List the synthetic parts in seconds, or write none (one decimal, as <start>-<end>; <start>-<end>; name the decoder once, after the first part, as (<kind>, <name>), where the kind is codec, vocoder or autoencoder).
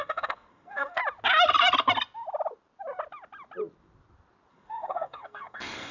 0.0-1.0 (codec, SNAC); 4.5-5.9